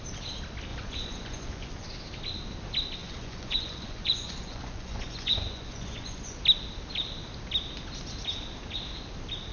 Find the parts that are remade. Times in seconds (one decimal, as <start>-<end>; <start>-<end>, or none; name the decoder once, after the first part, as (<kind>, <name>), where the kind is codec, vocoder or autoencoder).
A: 0.7-1.7 (vocoder, Vocos); 3.0-6.4